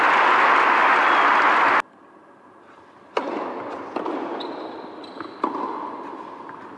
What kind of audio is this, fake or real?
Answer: real